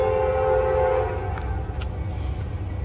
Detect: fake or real real